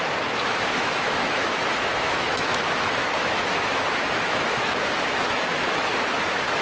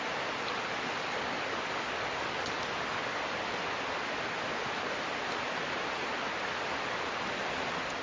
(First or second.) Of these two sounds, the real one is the second